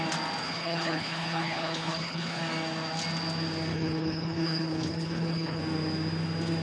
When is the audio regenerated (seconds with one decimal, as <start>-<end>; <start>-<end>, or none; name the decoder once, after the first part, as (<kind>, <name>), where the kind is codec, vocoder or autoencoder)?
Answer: 0.4-2.4 (codec, HILCodec); 3.7-5.6